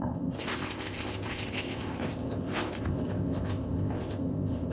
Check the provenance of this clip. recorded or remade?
remade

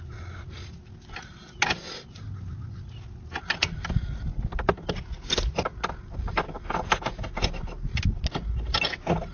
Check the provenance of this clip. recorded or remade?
recorded